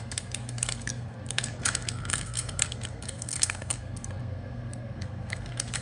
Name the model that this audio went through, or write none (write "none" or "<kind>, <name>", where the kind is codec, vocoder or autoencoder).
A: codec, SNAC